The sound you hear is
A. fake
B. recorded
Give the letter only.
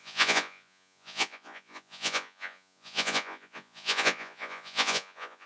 A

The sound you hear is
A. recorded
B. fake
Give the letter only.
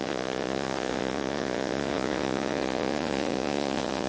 B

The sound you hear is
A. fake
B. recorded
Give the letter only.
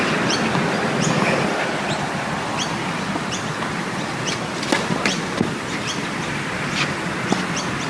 B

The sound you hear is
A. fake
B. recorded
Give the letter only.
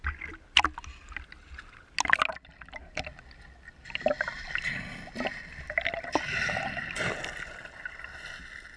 B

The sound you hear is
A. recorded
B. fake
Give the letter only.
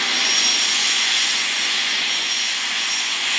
B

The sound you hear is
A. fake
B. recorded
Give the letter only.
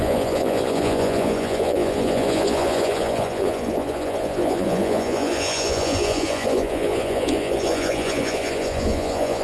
A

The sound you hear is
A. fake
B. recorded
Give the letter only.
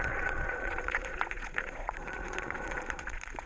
A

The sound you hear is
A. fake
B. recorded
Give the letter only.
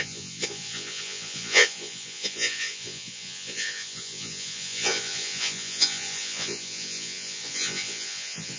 A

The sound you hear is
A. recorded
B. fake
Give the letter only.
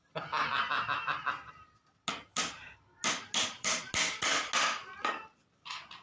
A